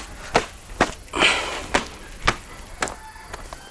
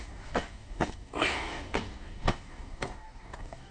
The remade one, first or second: second